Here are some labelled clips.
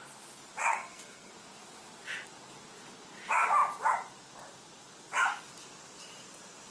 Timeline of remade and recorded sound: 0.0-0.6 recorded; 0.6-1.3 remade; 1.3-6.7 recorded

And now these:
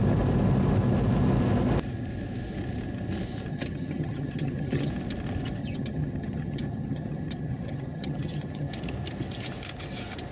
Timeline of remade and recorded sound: 0.0-3.5 recorded; 3.5-4.9 remade; 4.9-5.6 recorded; 5.6-8.7 remade; 8.7-10.3 recorded

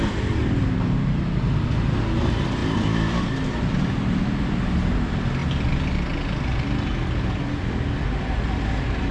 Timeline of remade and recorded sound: 0.0-9.1 recorded